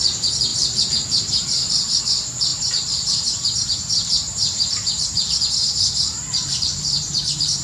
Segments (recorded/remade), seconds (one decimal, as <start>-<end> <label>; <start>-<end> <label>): 0.0-7.6 remade